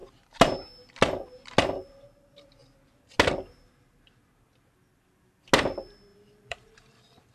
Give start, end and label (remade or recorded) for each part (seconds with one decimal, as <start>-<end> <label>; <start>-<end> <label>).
0.0-0.9 remade; 0.9-6.1 recorded; 6.1-7.3 remade